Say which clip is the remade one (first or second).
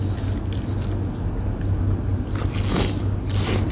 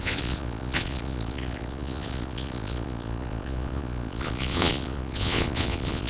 second